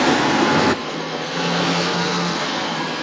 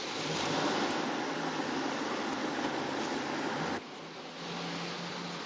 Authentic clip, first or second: second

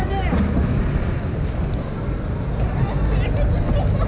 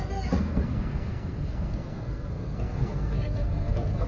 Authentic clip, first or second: first